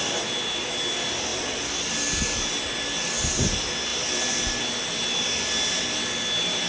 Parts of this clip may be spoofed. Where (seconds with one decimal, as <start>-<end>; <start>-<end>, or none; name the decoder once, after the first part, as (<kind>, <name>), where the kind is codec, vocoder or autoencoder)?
none